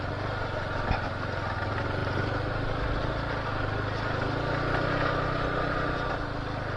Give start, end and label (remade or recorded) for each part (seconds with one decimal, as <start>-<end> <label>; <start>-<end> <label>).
0.0-6.8 recorded